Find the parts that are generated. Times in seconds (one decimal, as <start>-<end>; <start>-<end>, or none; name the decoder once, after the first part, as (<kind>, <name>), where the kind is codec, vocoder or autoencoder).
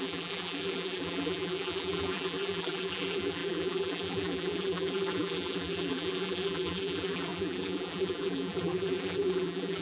0.0-9.8 (vocoder, BigVGAN v2)